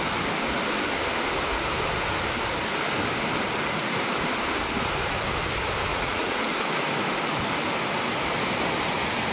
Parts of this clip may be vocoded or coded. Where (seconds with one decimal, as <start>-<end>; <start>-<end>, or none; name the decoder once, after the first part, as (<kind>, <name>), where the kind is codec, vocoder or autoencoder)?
5.9-6.4 (vocoder, Vocos)